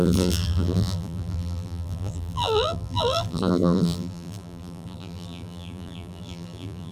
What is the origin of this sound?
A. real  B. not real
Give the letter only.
B